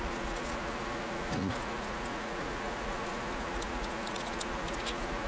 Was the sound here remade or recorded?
remade